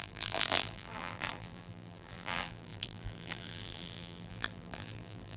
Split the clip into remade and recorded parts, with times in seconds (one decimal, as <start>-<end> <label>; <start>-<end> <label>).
0.0-5.4 remade